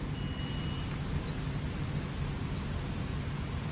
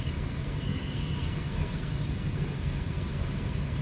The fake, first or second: second